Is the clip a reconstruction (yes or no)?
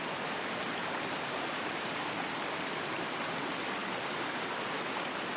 no